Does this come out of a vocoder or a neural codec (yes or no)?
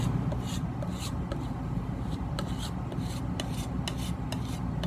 no